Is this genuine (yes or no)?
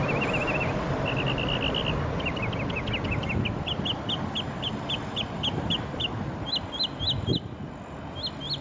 yes